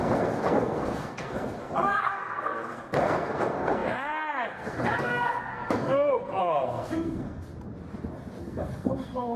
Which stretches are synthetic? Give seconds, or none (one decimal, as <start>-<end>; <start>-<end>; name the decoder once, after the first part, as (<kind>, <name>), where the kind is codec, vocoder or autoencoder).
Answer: 0.0-7.5 (codec, SNAC); 8.4-9.4